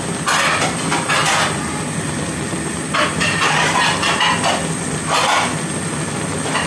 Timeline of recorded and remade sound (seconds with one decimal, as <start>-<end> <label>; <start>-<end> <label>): 0.0-6.7 recorded